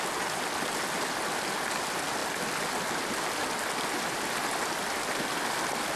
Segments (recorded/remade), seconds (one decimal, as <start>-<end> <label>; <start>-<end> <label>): 0.0-6.0 recorded